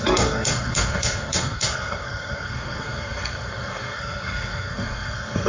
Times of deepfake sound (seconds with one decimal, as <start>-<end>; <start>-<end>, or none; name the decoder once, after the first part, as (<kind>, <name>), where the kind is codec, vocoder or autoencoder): 0.0-5.5 (codec, SNAC)